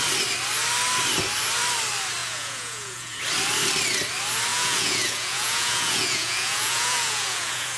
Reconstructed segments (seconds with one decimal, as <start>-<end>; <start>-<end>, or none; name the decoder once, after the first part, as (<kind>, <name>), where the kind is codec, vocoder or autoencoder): 2.2-3.2 (vocoder, Vocos); 4.5-7.8